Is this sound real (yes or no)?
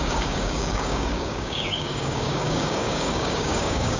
no